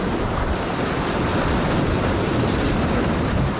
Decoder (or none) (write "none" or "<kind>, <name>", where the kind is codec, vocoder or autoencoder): none